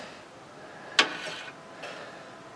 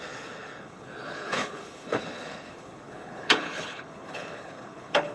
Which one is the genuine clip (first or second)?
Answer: first